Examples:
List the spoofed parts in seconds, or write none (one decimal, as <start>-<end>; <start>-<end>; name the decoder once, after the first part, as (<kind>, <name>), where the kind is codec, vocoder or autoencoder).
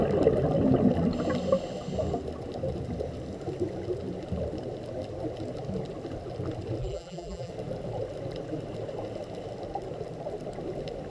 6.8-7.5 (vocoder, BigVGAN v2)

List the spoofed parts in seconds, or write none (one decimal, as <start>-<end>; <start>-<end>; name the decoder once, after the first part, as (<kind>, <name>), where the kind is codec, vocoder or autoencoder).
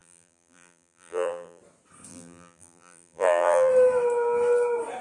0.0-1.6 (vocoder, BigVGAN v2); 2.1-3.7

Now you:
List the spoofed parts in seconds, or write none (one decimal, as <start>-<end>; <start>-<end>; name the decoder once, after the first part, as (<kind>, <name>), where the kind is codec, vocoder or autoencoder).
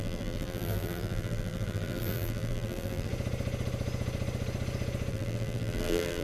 0.0-3.1 (vocoder, BigVGAN v2); 5.1-6.2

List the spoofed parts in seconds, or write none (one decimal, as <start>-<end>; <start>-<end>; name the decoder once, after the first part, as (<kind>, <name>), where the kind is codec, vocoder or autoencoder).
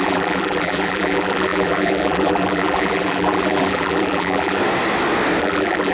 0.0-4.6 (vocoder, BigVGAN v2); 5.4-5.9